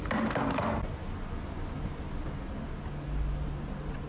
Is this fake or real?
real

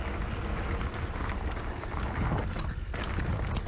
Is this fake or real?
real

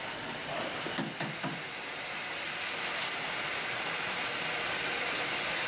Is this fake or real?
real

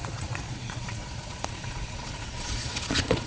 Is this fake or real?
fake